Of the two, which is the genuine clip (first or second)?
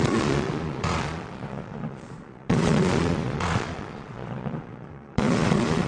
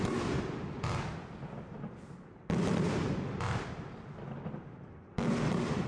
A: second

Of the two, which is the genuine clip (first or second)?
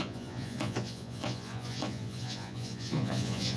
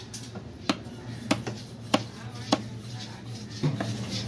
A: second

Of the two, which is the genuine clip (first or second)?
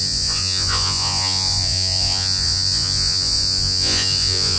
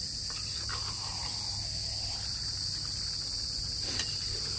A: second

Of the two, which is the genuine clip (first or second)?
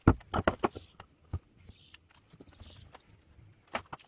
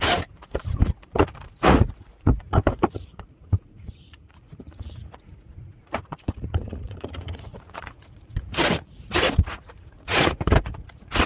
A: first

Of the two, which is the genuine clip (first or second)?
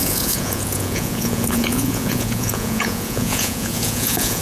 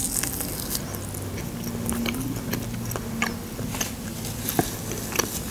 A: second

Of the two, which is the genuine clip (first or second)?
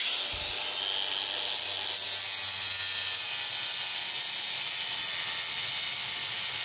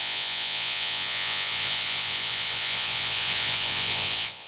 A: first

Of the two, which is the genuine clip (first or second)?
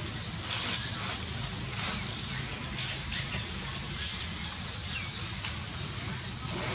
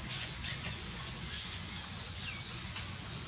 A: first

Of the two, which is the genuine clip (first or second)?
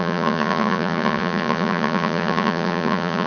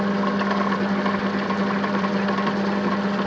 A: second